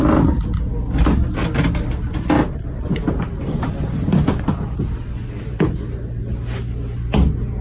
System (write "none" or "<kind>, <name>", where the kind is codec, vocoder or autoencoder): none